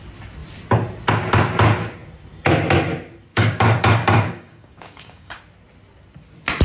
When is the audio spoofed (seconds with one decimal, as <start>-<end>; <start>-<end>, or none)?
3.3-5.4